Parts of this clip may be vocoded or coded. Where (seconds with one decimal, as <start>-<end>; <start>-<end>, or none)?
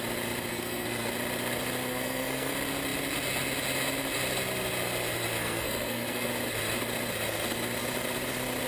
0.5-1.1; 1.9-2.5; 5.4-6.3